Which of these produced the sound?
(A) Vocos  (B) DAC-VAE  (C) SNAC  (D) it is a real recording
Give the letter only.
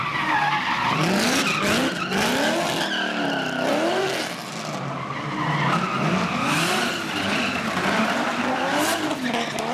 D